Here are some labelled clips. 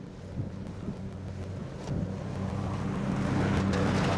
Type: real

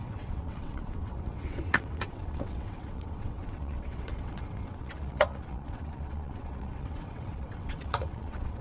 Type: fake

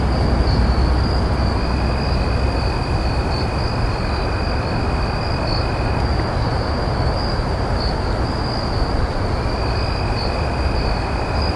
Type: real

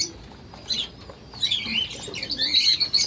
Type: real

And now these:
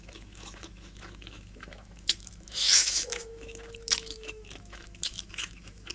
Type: fake